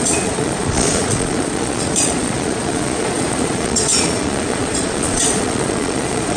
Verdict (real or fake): fake